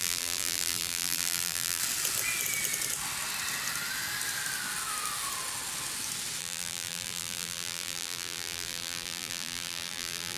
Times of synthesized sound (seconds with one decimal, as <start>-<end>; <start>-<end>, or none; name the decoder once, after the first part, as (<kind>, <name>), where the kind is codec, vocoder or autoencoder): 0.0-1.8 (vocoder, BigVGAN v2); 6.4-10.4